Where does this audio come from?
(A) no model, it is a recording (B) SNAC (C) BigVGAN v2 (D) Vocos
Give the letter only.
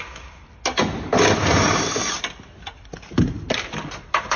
A